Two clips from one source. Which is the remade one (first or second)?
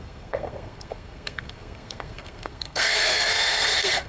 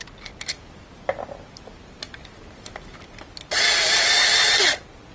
first